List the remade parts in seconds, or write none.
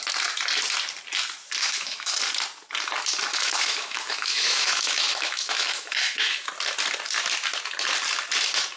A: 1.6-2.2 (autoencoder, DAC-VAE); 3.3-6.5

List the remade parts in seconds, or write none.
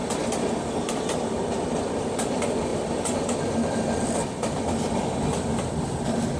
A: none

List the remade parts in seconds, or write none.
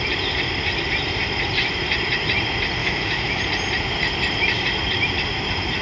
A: 2.8-3.4 (autoencoder, DAC-VAE)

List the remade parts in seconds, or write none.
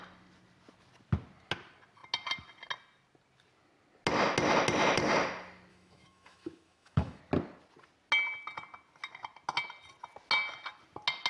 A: 5.7-7.2 (autoencoder, DAC-VAE)